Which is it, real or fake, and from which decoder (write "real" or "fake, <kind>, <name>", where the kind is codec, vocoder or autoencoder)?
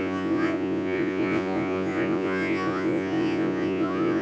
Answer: fake, vocoder, Vocos